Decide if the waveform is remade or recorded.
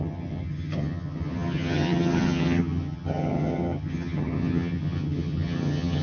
remade